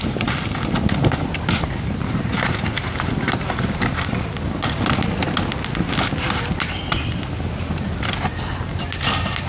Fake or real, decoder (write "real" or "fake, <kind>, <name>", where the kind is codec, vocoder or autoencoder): real